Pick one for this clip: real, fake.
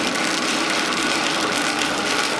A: real